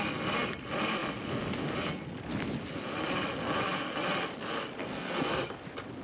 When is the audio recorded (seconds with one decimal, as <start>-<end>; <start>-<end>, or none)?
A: 0.0-4.8; 5.3-6.0